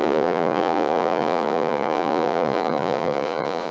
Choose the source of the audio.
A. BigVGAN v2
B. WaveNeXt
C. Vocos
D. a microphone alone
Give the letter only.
C